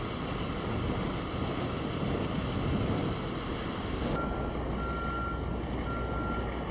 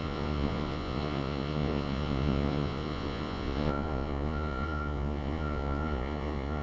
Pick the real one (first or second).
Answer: first